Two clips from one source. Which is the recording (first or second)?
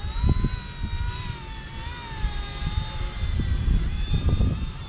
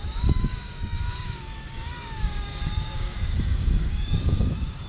first